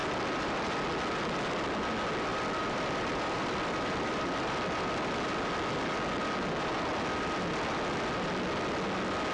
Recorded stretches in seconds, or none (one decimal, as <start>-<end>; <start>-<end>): 0.8-2.3; 4.5-9.3